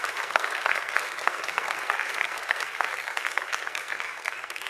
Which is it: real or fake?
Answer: fake